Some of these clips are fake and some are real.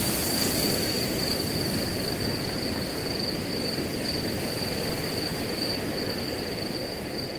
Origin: real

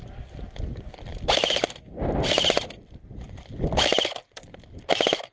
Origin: fake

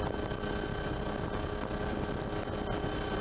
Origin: real